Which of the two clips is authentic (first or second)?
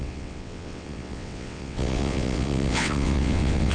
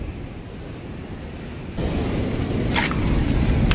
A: second